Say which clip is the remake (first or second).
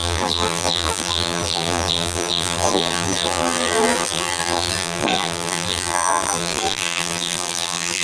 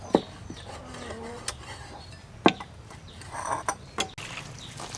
first